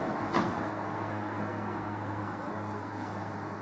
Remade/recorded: remade